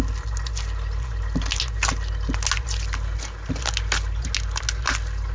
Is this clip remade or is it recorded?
recorded